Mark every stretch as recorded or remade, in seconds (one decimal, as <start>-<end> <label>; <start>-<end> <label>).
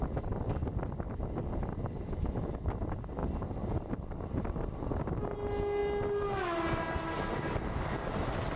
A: 0.0-8.6 recorded